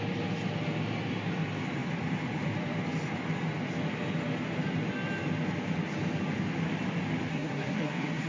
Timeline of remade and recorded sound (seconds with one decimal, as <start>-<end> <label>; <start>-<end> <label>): 0.0-7.3 recorded; 7.3-8.3 remade